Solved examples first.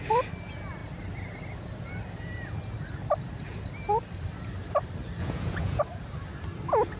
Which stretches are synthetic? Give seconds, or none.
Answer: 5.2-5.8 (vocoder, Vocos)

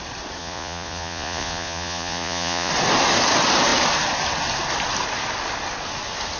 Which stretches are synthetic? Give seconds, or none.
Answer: 0.4-2.7 (vocoder, Vocos)

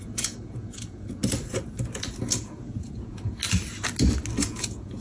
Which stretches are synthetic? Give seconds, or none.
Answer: 0.0-1.2 (vocoder, Vocos); 2.2-3.4; 4.4-5.0